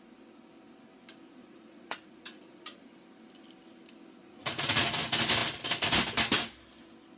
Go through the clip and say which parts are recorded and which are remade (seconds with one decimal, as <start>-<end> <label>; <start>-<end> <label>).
0.0-1.4 recorded; 1.4-2.8 remade; 2.8-4.2 recorded; 4.2-4.9 remade; 4.9-7.2 recorded